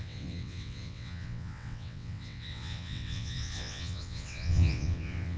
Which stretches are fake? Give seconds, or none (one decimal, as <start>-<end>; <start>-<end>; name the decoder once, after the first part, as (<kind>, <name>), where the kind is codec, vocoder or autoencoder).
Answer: 0.0-5.4 (vocoder, WaveNeXt)